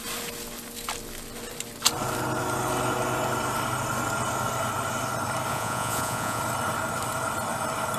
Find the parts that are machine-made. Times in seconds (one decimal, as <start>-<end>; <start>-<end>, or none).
5.5-6.4